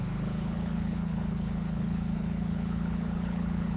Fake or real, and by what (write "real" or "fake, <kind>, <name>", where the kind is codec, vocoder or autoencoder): fake, codec, HILCodec